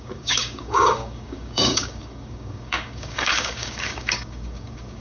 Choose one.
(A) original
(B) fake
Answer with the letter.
B